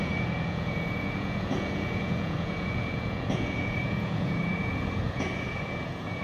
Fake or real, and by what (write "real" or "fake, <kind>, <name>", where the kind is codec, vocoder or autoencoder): fake, vocoder, Vocos